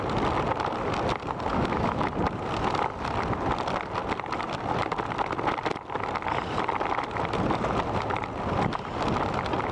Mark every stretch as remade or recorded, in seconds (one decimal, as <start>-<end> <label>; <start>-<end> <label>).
0.0-1.5 recorded; 1.5-2.1 remade; 2.1-9.7 recorded

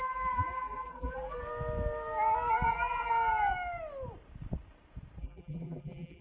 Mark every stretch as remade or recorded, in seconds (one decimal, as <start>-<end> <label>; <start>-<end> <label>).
0.0-1.4 remade; 1.4-2.7 recorded; 2.7-3.1 remade; 3.1-5.2 recorded; 5.2-6.2 remade